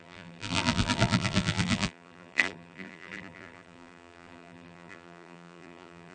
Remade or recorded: remade